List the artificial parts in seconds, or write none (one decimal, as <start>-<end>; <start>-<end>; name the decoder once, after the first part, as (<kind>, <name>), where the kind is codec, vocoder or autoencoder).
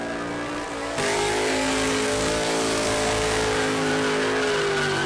0.8-3.9 (codec, DAC)